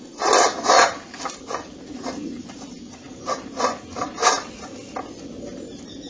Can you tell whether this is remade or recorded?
recorded